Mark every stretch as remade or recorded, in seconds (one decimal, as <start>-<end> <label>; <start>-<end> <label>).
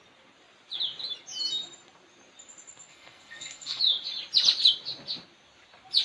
0.0-2.9 recorded; 2.9-3.8 remade; 3.8-6.0 recorded